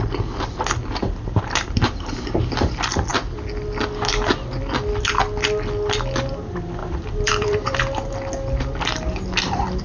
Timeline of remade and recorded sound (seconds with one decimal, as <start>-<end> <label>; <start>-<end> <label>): 0.0-1.0 recorded; 1.0-2.7 remade; 2.7-6.8 recorded; 6.8-7.8 remade; 7.8-9.8 recorded